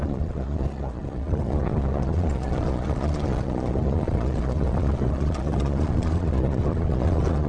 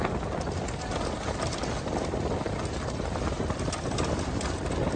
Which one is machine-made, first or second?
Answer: first